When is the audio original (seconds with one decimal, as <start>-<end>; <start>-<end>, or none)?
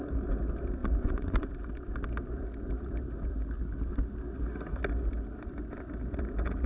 0.0-0.8; 1.5-6.7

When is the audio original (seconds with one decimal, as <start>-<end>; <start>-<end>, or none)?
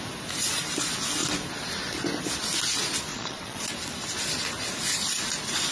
0.0-3.1; 3.7-5.7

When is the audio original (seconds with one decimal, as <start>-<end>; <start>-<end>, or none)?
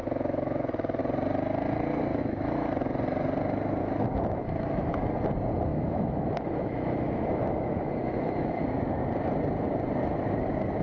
1.0-2.1; 2.7-3.8; 5.1-5.7; 8.8-10.8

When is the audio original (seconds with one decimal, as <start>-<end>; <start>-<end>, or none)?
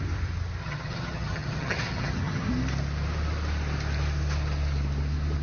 0.0-0.6; 2.5-5.4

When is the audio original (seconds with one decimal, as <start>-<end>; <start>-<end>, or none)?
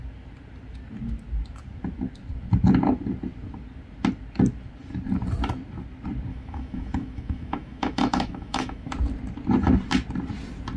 0.0-6.3; 8.9-10.8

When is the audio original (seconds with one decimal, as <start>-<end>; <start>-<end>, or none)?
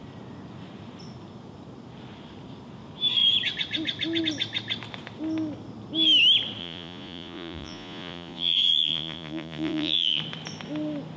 0.0-6.6; 10.2-11.2